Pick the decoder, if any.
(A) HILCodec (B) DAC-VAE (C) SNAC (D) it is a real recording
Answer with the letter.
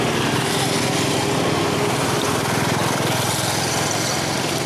D